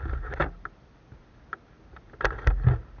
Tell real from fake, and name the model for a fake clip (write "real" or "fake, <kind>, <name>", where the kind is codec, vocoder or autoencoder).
real